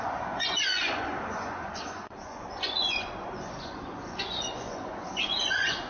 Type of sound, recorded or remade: remade